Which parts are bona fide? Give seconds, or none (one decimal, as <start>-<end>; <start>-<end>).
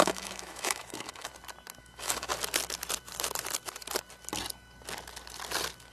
1.3-1.8; 2.3-5.9